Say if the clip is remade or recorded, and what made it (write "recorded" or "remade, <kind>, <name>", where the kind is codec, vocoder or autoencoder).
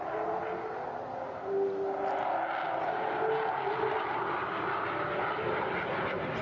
recorded